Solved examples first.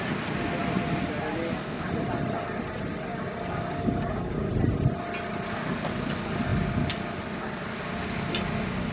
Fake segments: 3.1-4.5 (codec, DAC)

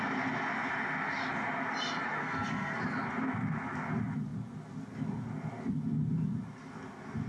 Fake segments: 2.2-2.8 (codec, SNAC)

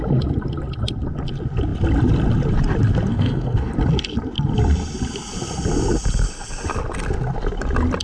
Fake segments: 3.1-3.7 (codec, SNAC)

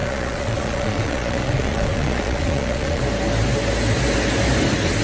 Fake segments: 0.0-3.0 (vocoder, Vocos)

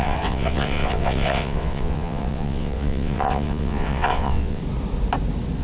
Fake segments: 0.0-4.6 (vocoder, WaveNeXt)

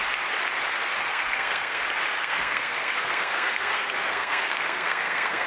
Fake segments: 1.1-1.8 (codec, SNAC); 2.2-5.5

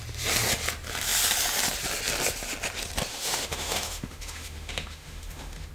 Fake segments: 3.1-5.7 (autoencoder, DAC-VAE)